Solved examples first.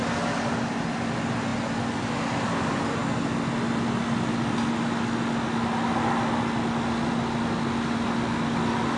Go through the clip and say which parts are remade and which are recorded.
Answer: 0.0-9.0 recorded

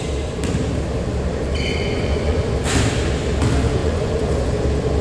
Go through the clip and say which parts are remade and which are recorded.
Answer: 0.0-1.7 recorded; 1.7-2.4 remade; 2.4-3.8 recorded; 3.8-4.3 remade; 4.3-5.0 recorded

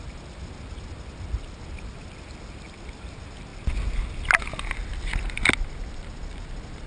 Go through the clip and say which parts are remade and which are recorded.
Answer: 0.0-6.9 recorded

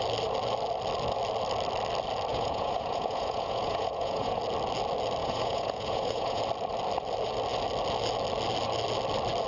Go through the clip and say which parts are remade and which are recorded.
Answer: 0.0-2.3 recorded; 2.3-4.4 remade; 4.4-5.2 recorded; 5.2-6.4 remade; 6.4-9.5 recorded

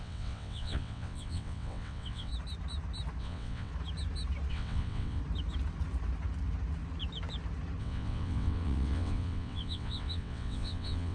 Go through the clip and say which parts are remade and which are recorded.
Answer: 0.0-2.3 remade; 2.3-3.2 recorded; 3.2-3.7 remade; 3.7-4.5 recorded; 4.5-5.2 remade; 5.2-7.8 recorded; 7.8-11.1 remade

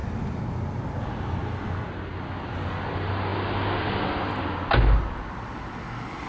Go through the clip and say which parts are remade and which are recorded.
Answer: 0.0-6.3 recorded

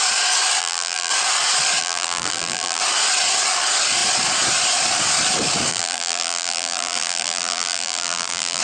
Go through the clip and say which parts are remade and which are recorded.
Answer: 0.0-0.6 recorded; 0.6-1.1 remade; 1.1-1.8 recorded; 1.8-2.8 remade; 2.8-5.7 recorded; 5.7-8.6 remade